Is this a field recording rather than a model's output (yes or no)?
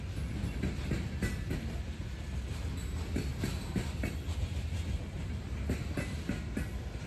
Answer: yes